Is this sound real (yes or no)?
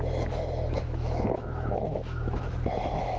no